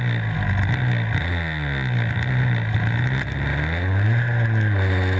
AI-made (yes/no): no